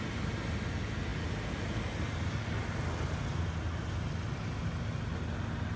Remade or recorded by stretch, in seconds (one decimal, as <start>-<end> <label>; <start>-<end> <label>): 0.0-5.8 recorded